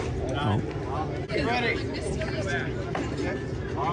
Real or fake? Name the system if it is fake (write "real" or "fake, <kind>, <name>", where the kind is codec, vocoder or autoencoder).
real